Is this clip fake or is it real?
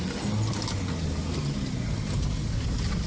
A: real